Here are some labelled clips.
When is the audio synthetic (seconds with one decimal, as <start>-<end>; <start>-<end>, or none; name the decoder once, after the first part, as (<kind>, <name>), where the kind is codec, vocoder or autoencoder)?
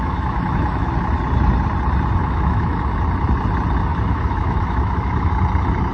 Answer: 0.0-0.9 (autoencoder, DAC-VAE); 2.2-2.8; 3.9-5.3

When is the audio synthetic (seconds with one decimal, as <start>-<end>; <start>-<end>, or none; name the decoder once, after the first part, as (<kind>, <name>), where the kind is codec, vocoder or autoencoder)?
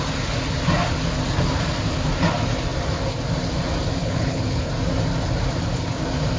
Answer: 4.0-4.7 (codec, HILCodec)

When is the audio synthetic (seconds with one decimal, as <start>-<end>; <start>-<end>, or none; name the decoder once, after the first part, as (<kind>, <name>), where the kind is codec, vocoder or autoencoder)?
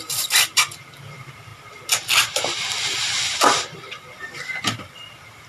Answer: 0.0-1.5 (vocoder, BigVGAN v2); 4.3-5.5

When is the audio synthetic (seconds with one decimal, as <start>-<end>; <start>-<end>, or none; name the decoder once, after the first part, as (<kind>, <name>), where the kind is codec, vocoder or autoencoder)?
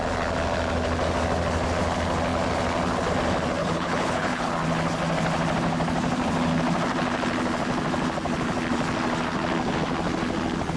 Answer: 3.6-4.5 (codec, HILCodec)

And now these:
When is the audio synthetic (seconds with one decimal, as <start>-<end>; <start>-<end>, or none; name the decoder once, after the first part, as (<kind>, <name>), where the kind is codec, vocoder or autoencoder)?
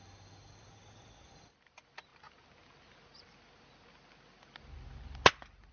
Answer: none